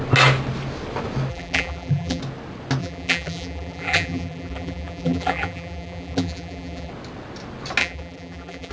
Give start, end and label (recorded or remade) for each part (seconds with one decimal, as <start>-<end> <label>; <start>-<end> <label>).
0.0-1.3 recorded; 1.3-2.2 remade; 2.2-2.8 recorded; 2.8-6.9 remade; 6.9-7.8 recorded; 7.8-8.7 remade